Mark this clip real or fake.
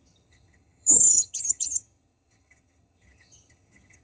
fake